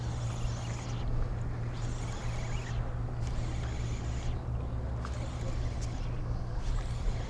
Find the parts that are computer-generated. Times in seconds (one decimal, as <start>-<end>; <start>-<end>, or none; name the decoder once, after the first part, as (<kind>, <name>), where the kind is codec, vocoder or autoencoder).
none